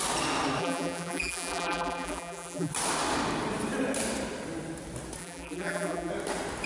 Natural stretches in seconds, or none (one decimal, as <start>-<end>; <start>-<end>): 0.0-0.6; 2.7-5.2; 6.1-6.7